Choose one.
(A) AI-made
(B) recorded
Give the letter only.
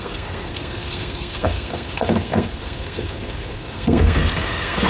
A